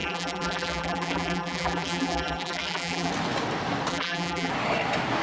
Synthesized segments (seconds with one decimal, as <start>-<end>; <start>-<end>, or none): 0.0-3.1; 3.9-4.5